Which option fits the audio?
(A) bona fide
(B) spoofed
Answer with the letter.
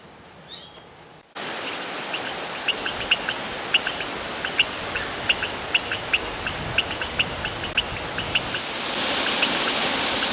A